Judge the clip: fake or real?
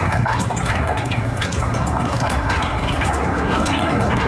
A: fake